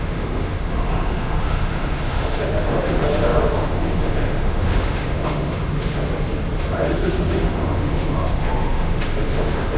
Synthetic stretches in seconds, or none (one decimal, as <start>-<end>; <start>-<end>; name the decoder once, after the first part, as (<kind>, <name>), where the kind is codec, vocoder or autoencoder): 0.0-6.0 (autoencoder, DAC-VAE); 6.6-9.8